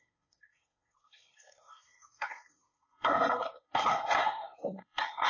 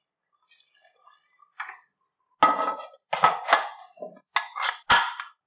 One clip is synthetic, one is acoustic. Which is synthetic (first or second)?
first